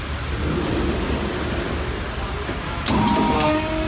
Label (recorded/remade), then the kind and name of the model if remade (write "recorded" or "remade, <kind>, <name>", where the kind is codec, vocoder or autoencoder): recorded